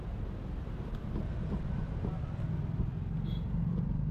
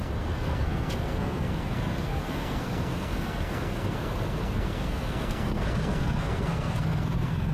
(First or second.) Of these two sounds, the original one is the first